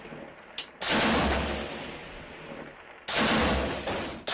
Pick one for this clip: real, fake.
real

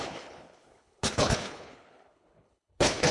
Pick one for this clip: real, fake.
fake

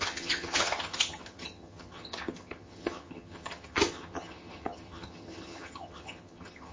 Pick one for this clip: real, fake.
fake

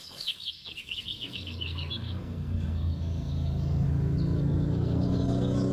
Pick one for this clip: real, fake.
fake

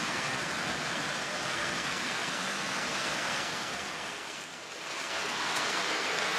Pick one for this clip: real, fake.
fake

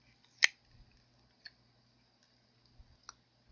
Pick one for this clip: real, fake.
real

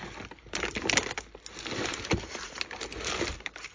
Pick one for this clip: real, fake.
real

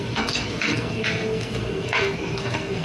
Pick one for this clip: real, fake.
fake